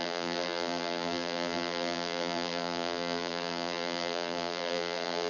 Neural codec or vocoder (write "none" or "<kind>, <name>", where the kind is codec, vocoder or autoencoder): vocoder, BigVGAN v2